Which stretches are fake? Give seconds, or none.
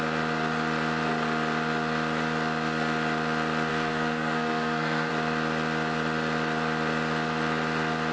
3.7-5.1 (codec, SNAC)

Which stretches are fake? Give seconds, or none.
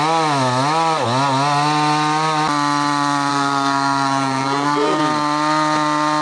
3.3-5.0 (codec, SNAC)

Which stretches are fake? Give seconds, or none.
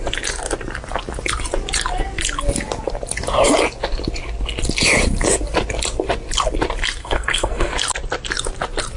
7.0-7.7 (codec, SNAC)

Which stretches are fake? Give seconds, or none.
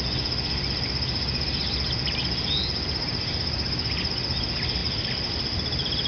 none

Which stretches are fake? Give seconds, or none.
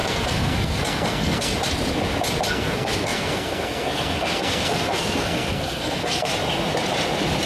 0.0-1.5 (codec, SNAC); 2.5-6.3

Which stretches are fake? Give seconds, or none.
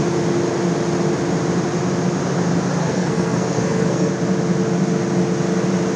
2.8-4.1 (codec, SNAC)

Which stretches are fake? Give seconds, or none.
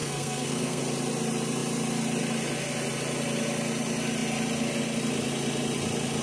0.0-0.8 (codec, SNAC)